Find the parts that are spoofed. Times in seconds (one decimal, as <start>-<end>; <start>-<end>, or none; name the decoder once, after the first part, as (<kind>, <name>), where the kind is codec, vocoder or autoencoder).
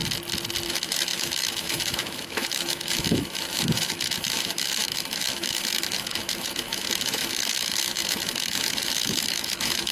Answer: 0.7-9.9 (autoencoder, DAC-VAE)